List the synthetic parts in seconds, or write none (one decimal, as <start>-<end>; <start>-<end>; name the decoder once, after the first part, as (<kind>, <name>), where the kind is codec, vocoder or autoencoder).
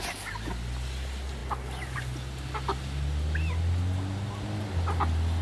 none